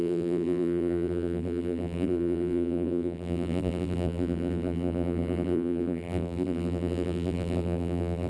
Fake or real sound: fake